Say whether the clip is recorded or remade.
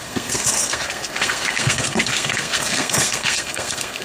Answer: remade